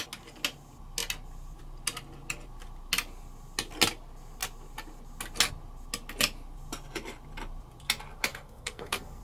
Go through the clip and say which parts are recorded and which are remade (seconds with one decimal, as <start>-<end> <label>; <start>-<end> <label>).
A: 0.0-8.3 recorded; 8.3-9.2 remade